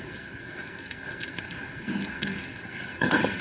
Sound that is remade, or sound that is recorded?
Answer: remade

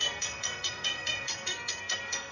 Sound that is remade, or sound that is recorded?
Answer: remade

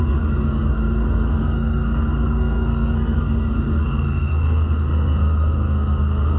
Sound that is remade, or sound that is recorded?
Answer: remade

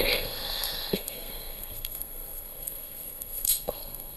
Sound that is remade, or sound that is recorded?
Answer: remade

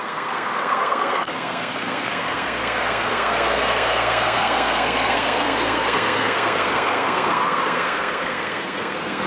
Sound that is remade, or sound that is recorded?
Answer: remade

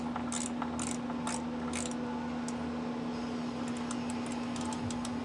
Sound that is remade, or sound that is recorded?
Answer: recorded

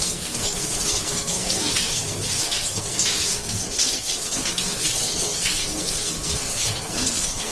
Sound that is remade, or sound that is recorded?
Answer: remade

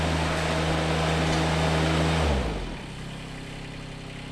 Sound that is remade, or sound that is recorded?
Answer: recorded